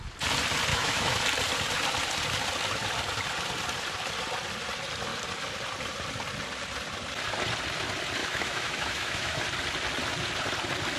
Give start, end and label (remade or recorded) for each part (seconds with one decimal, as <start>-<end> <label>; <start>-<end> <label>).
0.0-0.7 recorded; 0.7-1.2 remade; 1.2-8.2 recorded; 8.2-9.4 remade; 9.4-11.0 recorded